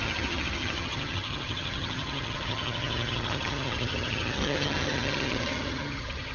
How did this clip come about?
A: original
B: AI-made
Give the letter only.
B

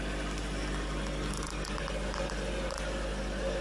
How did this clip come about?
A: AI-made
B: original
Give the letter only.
B